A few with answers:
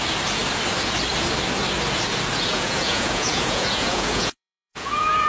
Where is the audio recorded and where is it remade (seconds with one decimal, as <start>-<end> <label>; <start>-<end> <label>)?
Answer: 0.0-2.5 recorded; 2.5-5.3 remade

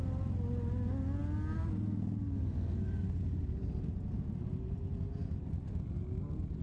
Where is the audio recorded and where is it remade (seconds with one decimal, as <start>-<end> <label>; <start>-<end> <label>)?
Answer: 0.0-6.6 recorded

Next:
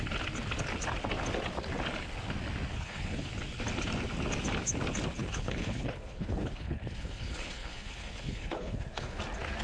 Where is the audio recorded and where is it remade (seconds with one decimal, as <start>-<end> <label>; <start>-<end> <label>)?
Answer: 0.0-2.7 recorded; 2.7-3.3 remade; 3.3-5.2 recorded; 5.2-9.2 remade; 9.2-9.6 recorded

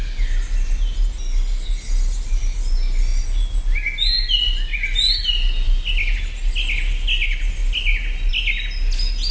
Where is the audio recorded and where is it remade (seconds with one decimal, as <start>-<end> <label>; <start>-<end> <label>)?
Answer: 0.0-9.3 recorded

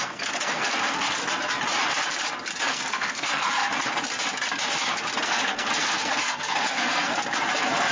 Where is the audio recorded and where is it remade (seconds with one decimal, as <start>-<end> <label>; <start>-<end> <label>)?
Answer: 0.0-1.2 remade; 1.2-2.6 recorded; 2.6-3.6 remade; 3.6-5.2 recorded; 5.2-7.1 remade; 7.1-7.9 recorded

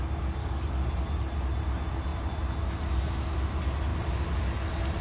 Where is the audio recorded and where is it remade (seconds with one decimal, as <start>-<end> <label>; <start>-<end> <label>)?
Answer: 0.0-0.4 recorded; 0.4-1.0 remade; 1.0-5.0 recorded

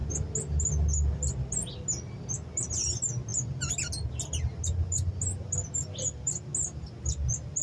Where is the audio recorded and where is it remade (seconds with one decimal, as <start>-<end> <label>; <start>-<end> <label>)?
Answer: 0.0-7.6 recorded